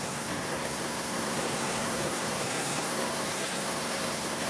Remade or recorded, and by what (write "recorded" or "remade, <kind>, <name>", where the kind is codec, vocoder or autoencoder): remade, codec, SNAC